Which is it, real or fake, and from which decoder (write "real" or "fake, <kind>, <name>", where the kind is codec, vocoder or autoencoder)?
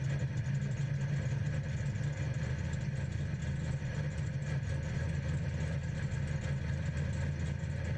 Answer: real